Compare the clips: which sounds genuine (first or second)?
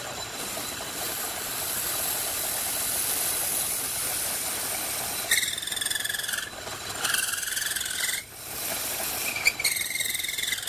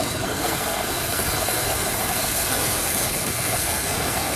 first